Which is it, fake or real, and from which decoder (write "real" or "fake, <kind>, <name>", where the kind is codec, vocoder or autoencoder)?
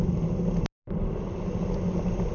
real